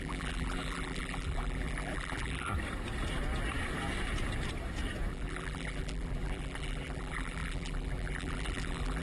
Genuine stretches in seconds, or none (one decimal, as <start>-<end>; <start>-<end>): 2.5-5.1